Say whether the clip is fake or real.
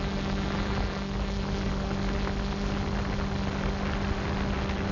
real